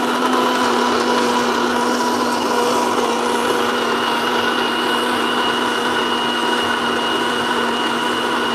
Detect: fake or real real